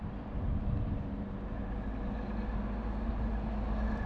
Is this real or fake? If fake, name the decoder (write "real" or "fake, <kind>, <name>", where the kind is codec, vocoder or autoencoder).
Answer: real